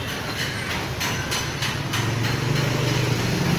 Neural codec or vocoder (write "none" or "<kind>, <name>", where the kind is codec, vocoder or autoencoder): none